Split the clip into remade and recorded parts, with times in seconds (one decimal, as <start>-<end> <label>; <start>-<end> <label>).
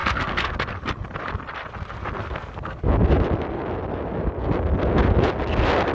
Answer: 0.0-0.5 remade; 0.5-2.2 recorded; 2.2-2.8 remade; 2.8-5.9 recorded